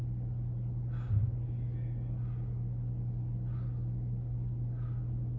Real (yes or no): yes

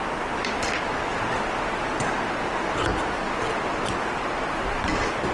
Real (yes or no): yes